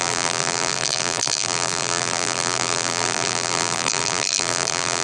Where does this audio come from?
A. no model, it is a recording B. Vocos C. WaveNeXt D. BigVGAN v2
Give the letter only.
D